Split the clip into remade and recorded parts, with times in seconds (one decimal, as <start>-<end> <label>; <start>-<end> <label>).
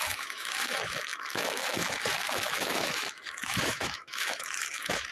0.0-5.1 remade